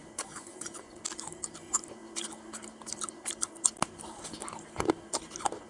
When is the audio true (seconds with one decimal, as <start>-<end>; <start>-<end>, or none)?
1.0-5.7